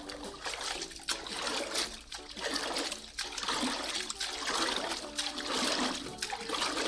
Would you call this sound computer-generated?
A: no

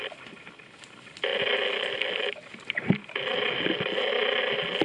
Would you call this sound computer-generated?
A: no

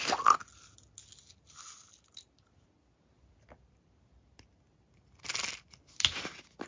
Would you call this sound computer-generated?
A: no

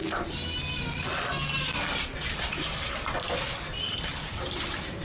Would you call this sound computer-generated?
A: no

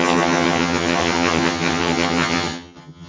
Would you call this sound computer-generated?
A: yes